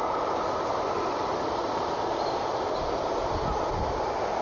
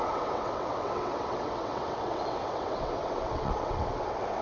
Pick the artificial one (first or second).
second